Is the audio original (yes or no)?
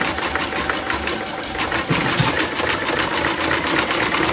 yes